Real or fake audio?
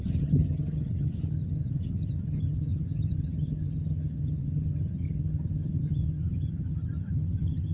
fake